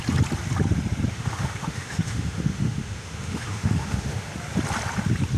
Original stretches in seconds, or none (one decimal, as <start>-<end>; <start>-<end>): 0.0-1.1; 4.3-5.4